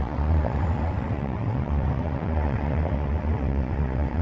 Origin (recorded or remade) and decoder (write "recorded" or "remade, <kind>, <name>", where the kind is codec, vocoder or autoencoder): remade, vocoder, WaveNeXt